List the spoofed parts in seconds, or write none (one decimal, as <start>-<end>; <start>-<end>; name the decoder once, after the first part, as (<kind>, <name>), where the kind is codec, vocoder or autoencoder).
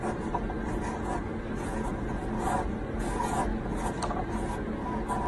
none